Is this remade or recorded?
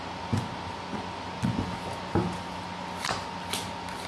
recorded